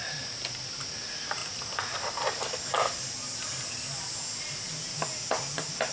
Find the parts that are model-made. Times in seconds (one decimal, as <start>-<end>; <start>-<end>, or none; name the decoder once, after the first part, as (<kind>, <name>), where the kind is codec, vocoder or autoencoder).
none